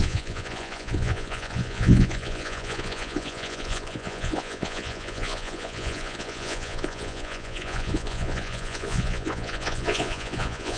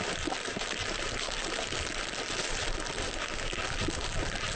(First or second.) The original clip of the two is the second